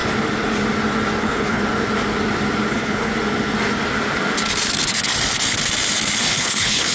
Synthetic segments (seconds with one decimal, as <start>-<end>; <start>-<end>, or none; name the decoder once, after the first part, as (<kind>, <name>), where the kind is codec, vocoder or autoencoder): 1.2-1.6 (codec, HILCodec); 2.7-3.1; 6.2-6.9